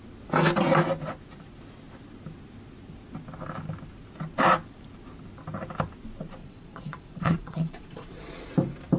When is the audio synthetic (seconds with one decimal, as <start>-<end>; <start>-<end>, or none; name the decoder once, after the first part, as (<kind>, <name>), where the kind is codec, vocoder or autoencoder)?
6.4-8.5 (vocoder, Vocos)